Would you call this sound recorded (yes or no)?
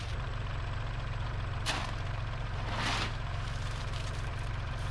no